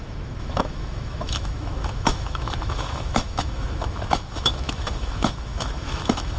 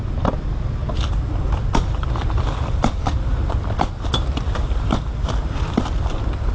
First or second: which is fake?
first